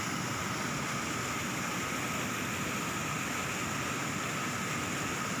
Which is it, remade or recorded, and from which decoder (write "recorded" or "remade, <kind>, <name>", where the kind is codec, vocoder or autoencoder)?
recorded